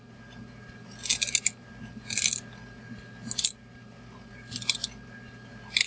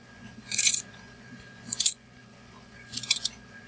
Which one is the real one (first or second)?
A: first